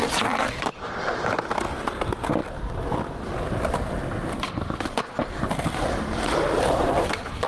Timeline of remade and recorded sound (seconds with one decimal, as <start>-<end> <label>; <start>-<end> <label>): 0.0-1.3 remade; 1.3-7.5 recorded